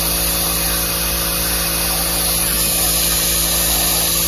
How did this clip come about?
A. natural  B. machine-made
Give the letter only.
A